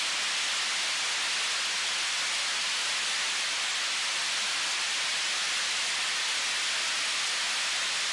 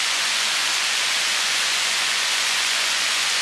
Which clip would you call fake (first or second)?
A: second